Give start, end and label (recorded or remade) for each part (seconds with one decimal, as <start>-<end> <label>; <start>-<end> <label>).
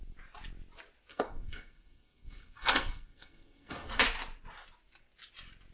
0.0-1.1 recorded; 1.1-4.0 remade; 4.0-5.7 recorded